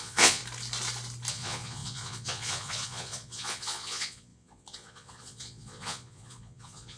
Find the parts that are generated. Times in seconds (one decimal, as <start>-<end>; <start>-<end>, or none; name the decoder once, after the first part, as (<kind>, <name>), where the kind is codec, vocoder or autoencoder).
0.0-0.4 (vocoder, Vocos); 1.3-7.0